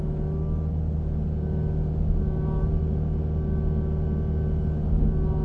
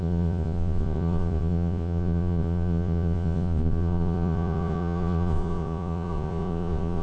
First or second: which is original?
first